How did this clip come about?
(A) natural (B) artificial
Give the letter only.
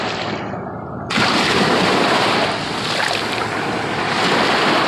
A